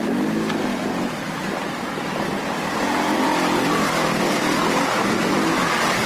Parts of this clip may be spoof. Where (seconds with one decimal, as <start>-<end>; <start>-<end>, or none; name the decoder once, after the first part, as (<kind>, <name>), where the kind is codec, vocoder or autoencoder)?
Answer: none